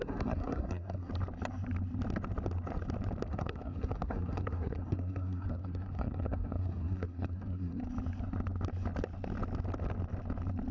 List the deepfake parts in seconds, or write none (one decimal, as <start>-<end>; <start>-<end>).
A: 0.0-1.1; 3.3-7.8